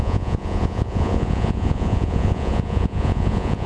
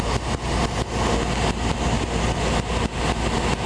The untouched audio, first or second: second